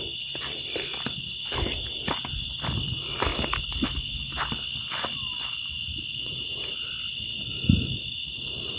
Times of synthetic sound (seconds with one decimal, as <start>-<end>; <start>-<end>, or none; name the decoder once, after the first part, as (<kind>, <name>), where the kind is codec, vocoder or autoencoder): 6.1-6.9 (vocoder, BigVGAN v2)